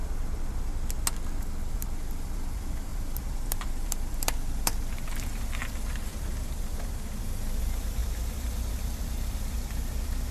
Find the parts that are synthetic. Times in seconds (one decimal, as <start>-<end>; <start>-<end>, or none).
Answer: 0.0-0.7; 1.7-10.3